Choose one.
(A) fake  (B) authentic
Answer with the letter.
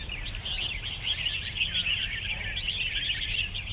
B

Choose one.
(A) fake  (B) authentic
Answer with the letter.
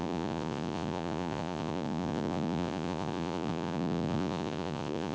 A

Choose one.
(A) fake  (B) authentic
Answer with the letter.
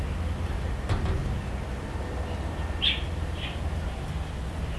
B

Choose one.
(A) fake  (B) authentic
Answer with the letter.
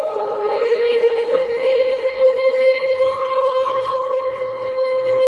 A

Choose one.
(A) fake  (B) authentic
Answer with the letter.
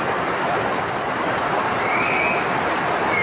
B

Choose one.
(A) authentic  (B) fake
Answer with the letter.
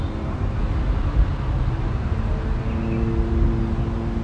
A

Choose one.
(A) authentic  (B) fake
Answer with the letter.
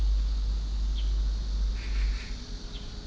A